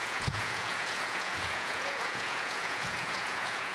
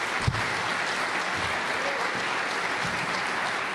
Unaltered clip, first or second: second